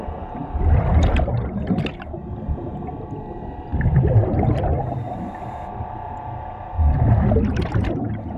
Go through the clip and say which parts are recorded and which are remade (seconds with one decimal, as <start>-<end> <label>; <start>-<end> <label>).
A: 0.0-3.7 recorded; 3.7-6.7 remade; 6.7-8.4 recorded